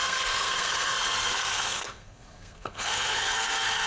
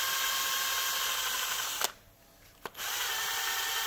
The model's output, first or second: first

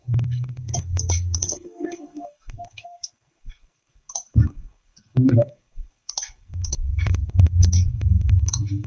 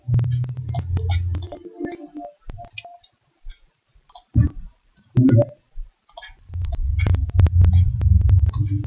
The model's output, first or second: first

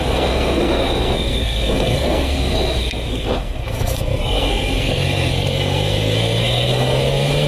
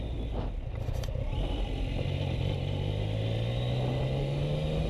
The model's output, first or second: first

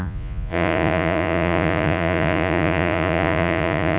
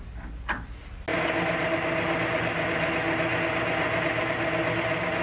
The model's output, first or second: first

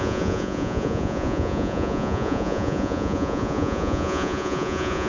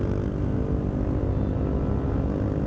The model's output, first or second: first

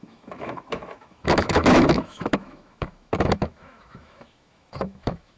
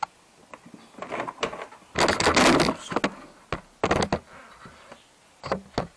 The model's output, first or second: first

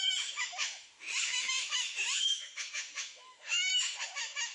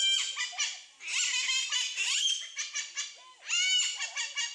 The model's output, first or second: first